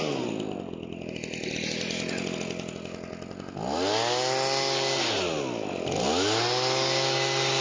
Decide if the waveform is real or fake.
real